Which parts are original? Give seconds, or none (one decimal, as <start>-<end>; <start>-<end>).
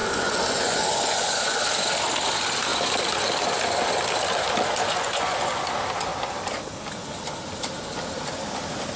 1.6-4.8; 5.6-9.0